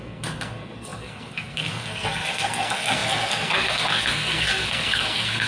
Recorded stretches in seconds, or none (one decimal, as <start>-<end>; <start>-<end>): none